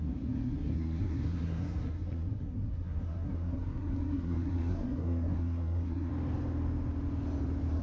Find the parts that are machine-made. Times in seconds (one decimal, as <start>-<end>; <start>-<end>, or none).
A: 0.0-6.1